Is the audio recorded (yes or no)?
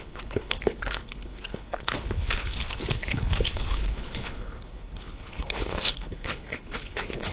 no